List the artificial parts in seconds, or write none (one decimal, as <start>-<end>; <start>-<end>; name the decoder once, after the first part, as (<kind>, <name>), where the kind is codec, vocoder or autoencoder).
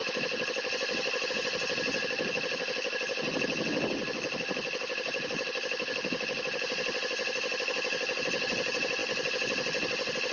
none